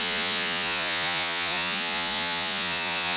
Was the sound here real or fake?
fake